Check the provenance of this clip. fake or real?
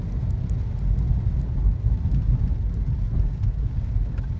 real